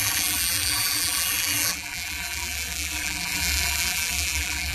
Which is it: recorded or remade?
remade